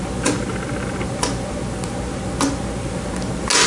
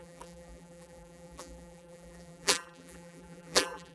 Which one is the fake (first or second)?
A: second